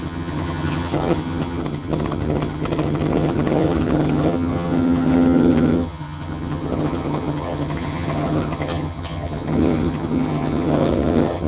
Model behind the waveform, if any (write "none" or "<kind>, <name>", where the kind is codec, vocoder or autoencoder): vocoder, HiFi-GAN